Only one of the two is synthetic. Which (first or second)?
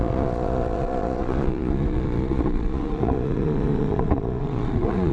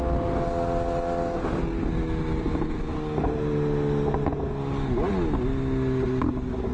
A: first